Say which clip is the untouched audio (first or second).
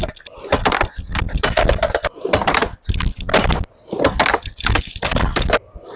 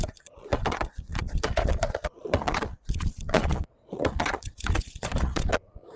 first